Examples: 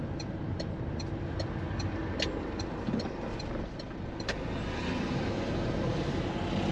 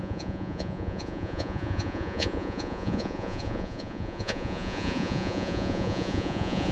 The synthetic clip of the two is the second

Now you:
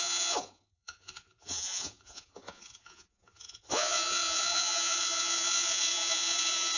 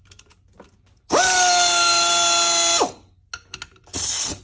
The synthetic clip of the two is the first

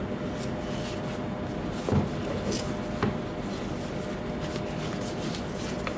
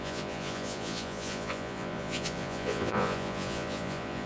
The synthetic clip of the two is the second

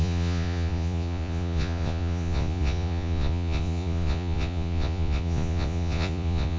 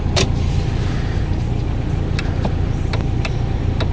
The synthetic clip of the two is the first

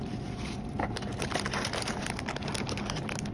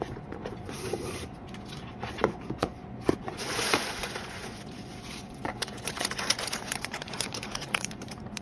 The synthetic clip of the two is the second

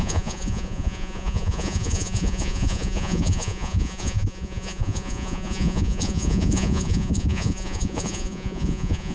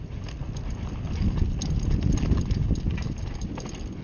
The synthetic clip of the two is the first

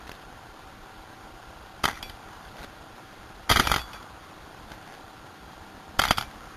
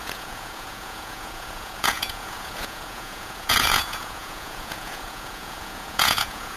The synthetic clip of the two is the second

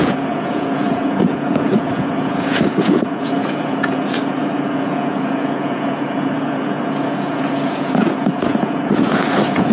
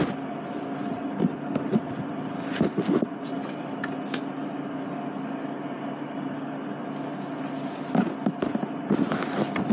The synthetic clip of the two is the first